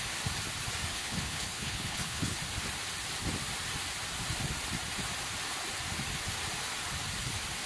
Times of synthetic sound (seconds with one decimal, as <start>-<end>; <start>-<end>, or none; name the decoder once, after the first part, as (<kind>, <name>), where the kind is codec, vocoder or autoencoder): 0.9-2.4 (codec, HILCodec)